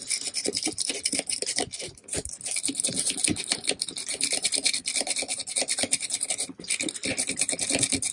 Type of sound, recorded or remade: remade